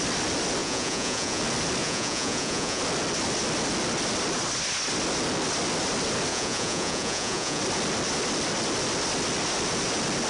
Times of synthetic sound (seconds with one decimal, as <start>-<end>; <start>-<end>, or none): 0.6-1.4; 1.8-2.8; 6.3-7.6